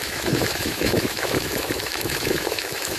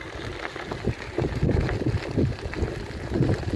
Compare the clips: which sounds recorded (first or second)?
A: second